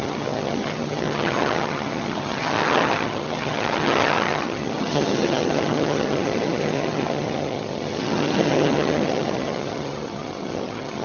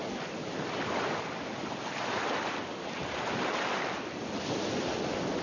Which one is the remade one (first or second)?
first